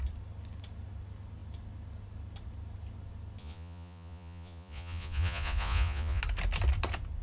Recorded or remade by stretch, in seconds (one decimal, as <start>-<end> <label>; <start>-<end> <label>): 0.0-3.4 recorded; 3.4-6.2 remade; 6.2-7.2 recorded